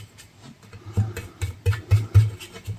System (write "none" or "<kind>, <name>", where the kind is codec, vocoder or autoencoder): none